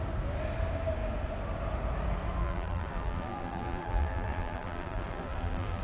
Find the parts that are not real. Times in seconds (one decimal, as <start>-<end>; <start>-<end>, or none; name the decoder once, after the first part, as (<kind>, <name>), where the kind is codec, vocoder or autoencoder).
2.4-5.8 (vocoder, BigVGAN v2)